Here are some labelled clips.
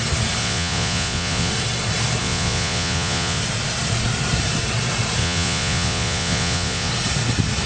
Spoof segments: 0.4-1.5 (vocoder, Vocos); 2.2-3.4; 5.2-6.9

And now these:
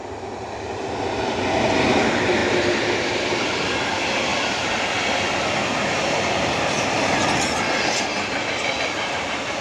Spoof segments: none

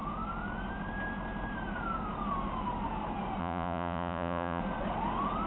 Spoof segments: 3.4-4.6 (vocoder, Vocos)

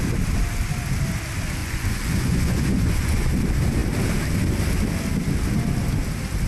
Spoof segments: 1.6-3.3 (vocoder, Vocos)

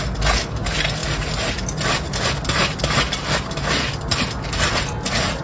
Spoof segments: none

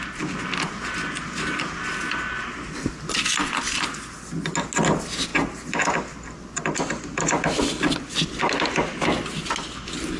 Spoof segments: none